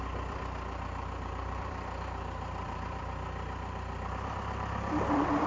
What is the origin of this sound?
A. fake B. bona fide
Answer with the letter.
A